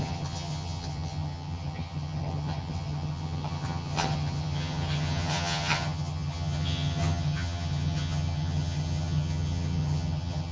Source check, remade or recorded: remade